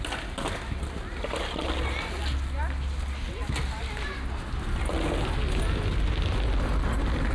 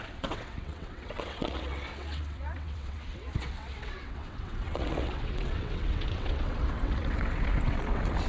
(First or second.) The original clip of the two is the first